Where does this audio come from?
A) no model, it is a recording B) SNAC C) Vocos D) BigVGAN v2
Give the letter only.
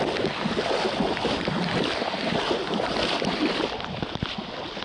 A